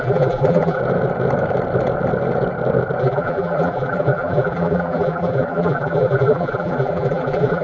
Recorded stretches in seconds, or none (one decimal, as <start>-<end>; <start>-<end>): 0.8-3.0